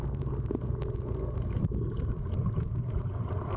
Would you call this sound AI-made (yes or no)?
no